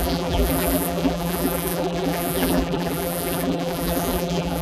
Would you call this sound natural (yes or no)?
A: no